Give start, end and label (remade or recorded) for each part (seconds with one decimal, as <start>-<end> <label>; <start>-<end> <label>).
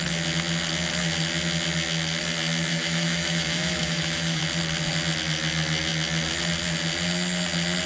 0.0-2.7 recorded; 2.7-4.4 remade; 4.4-7.9 recorded